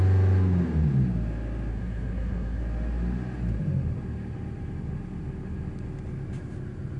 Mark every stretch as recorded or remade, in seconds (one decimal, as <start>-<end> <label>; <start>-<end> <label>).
0.0-1.7 recorded; 1.7-2.6 remade; 2.6-7.0 recorded